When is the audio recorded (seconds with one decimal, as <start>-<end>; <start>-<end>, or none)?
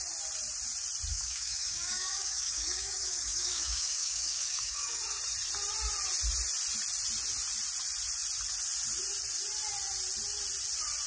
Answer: 0.0-1.1; 5.0-11.1